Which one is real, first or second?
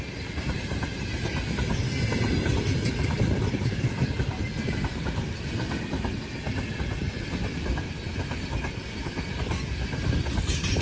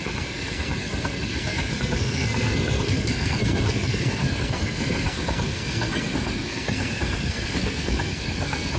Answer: first